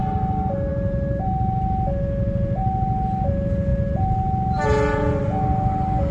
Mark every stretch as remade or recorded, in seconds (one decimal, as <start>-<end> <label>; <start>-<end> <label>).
0.0-6.1 recorded